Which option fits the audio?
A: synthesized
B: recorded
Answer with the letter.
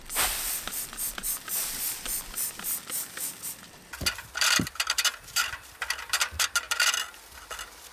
B